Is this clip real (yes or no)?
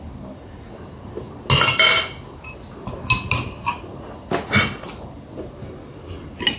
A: yes